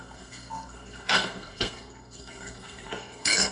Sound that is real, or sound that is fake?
fake